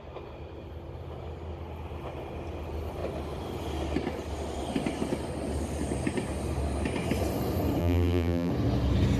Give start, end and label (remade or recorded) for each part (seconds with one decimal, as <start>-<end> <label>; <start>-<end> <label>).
0.0-7.8 recorded; 7.8-8.5 remade; 8.5-9.2 recorded